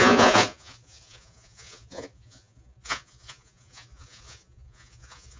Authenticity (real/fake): fake